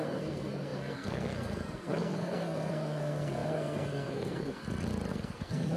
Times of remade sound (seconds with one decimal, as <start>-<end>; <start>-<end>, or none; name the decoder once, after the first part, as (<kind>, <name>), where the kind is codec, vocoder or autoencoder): 0.0-4.6 (codec, SNAC); 5.1-5.8